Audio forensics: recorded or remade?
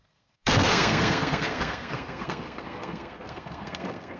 remade